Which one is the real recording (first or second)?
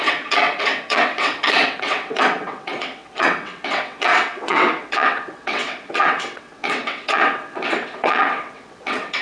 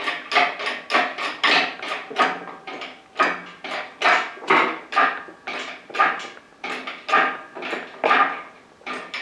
second